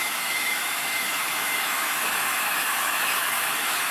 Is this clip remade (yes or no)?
yes